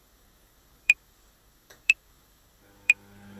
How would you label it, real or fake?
fake